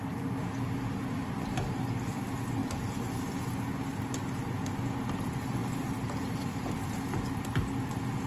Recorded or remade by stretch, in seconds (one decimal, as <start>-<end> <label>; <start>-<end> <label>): 0.0-2.6 recorded; 2.6-3.2 remade; 3.2-5.6 recorded; 5.6-6.7 remade; 6.7-8.3 recorded